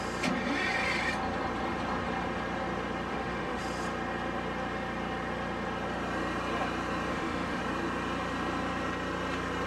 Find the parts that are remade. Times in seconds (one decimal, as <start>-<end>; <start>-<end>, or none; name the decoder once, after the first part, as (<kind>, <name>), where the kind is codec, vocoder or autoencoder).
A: 3.1-3.6 (autoencoder, DAC-VAE); 7.1-7.6